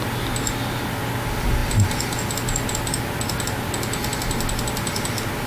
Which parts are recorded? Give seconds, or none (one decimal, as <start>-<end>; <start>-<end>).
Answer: 0.0-5.5